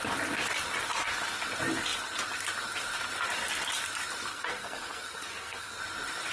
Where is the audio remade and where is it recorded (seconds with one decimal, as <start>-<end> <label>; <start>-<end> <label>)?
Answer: 0.0-4.3 recorded; 4.3-5.8 remade; 5.8-6.3 recorded